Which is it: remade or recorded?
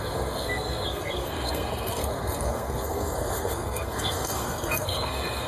remade